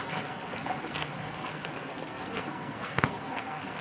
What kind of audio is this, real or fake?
fake